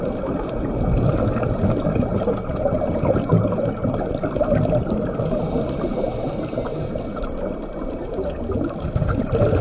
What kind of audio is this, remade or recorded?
recorded